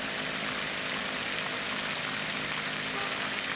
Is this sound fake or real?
real